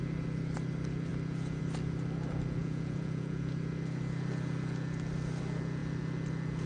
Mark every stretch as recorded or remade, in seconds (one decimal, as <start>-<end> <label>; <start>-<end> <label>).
0.0-2.6 recorded; 2.6-3.4 remade; 3.4-6.7 recorded